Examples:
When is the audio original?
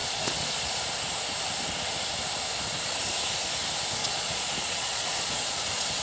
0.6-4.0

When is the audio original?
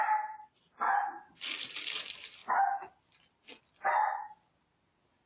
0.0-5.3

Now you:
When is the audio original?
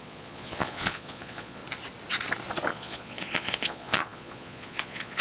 1.6-2.7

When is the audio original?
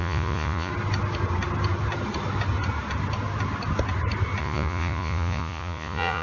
0.7-4.4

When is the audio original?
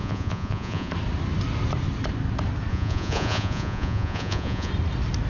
0.9-2.7; 4.7-5.3